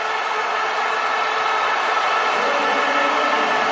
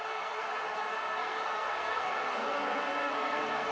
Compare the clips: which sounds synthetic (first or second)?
second